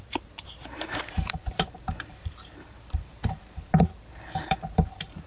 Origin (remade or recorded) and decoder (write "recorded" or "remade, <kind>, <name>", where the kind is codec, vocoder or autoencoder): remade, vocoder, BigVGAN v2